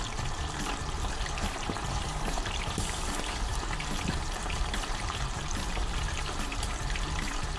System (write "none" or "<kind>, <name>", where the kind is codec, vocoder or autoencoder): vocoder, BigVGAN v2